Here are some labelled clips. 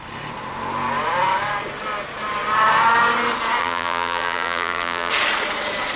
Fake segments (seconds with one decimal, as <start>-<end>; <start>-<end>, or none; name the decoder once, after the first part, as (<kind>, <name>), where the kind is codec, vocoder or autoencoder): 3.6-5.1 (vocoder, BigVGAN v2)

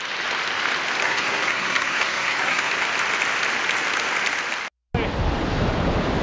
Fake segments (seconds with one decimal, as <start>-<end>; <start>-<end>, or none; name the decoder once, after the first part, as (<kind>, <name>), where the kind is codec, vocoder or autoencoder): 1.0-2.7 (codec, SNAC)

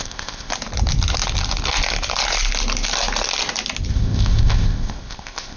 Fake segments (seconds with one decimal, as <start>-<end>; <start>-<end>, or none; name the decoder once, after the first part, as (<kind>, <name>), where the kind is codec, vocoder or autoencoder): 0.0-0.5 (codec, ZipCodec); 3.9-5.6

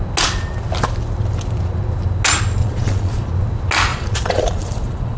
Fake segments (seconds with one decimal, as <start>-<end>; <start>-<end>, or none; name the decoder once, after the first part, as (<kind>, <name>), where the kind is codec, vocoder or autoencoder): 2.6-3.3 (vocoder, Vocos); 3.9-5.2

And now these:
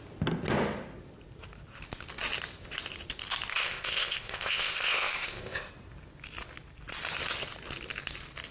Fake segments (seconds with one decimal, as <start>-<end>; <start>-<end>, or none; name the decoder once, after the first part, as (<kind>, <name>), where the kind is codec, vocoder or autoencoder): 3.5-5.7 (codec, ZipCodec)